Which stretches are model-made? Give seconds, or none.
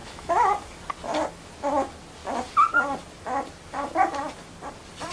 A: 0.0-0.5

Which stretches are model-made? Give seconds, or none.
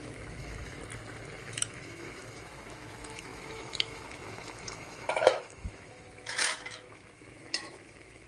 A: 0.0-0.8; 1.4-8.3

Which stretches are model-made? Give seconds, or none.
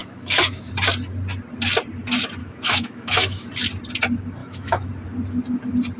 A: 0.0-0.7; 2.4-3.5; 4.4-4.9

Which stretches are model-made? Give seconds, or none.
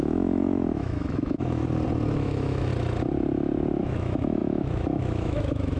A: 0.0-1.6; 2.1-2.7; 3.8-5.8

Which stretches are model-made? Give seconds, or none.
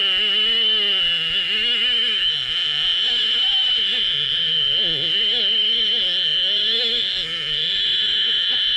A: 0.0-8.8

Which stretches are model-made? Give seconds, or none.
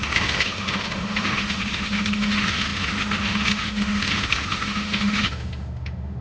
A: 0.0-6.2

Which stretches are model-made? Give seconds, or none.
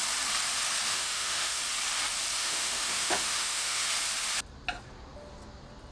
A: 0.9-1.6; 2.4-3.9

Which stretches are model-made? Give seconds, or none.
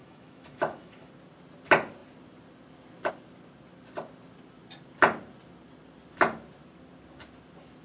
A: 0.0-1.1